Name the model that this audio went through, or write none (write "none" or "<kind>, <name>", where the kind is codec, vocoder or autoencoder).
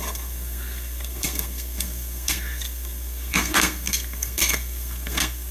codec, SNAC